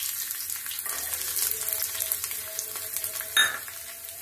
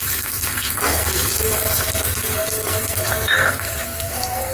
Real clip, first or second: first